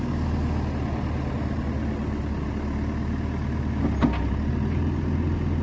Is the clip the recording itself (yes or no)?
yes